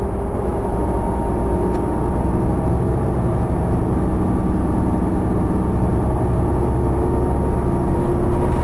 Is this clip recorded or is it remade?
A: recorded